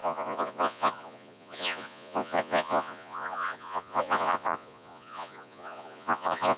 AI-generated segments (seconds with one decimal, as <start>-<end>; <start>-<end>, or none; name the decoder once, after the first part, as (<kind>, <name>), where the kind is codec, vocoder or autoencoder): 0.0-6.6 (vocoder, Vocos)